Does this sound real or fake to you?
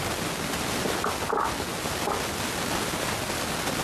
real